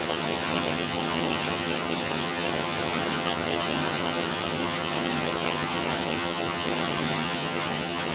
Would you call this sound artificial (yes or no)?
yes